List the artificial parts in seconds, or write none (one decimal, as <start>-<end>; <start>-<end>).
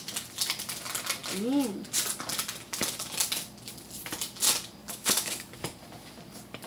4.8-5.6